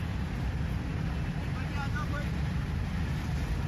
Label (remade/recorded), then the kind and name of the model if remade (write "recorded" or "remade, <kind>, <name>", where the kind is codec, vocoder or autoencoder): remade, vocoder, BigVGAN v2